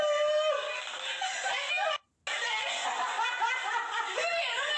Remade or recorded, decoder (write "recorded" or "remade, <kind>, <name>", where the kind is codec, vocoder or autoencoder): recorded